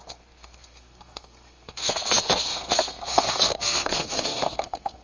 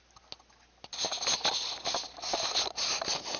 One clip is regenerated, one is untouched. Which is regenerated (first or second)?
first